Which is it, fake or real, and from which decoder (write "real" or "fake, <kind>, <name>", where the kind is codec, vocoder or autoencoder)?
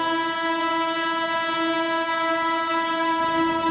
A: fake, vocoder, BigVGAN v2